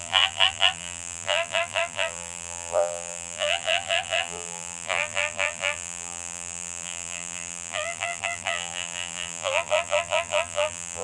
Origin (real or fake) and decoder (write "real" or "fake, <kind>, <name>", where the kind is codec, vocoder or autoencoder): fake, vocoder, BigVGAN v2